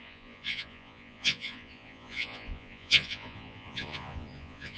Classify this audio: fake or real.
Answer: fake